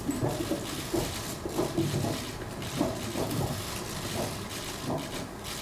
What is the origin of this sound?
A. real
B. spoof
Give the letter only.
A